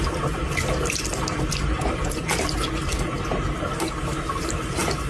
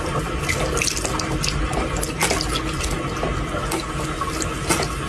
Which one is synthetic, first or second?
first